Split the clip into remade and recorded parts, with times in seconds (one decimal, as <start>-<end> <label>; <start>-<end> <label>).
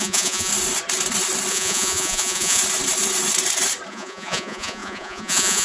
0.0-0.5 remade; 0.5-1.5 recorded; 1.5-2.6 remade; 2.6-3.9 recorded; 3.9-5.6 remade